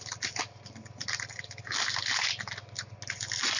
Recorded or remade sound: recorded